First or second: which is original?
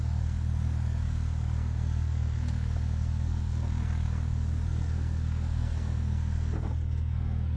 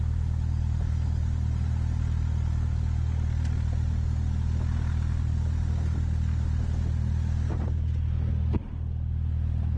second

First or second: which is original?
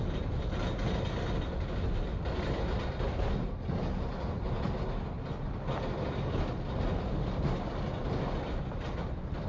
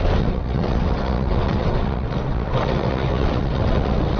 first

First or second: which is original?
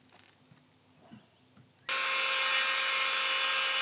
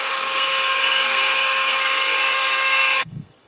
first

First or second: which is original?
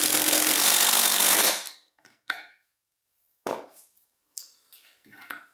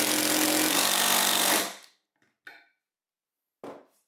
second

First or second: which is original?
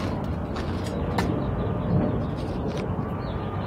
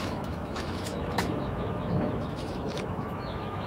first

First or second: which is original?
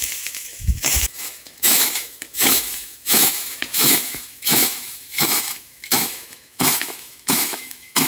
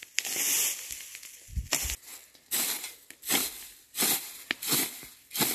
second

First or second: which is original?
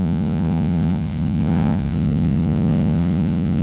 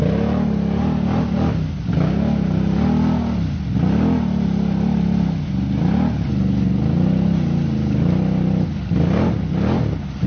second